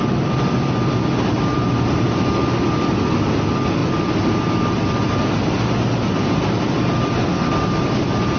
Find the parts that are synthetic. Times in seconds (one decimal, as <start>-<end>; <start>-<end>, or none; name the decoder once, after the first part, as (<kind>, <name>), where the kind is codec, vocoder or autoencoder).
none